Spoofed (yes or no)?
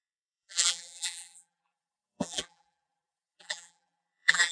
yes